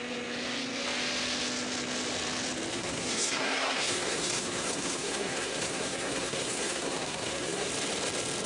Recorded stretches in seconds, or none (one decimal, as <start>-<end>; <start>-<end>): 0.0-2.7; 7.7-8.5